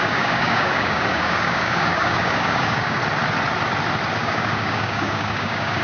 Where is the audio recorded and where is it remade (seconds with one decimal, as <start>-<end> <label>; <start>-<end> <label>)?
0.0-3.0 remade; 3.0-4.2 recorded; 4.2-5.8 remade